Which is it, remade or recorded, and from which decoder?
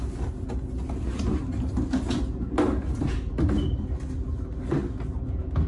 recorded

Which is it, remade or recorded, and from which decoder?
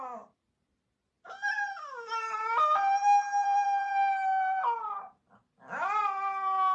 recorded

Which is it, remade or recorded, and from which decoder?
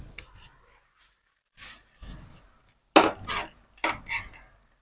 recorded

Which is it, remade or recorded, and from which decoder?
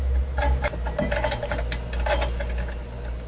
recorded